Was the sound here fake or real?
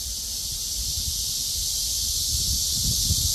real